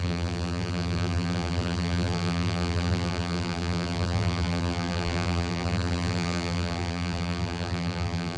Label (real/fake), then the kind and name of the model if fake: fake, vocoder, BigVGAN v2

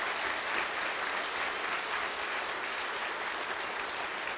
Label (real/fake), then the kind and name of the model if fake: real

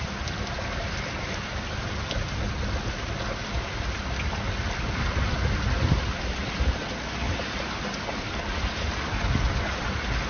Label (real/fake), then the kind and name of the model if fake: real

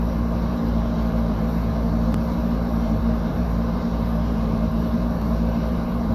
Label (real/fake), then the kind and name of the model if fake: fake, vocoder, BigVGAN v2